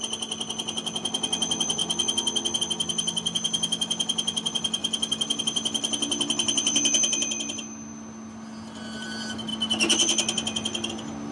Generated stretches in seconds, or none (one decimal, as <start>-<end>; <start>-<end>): none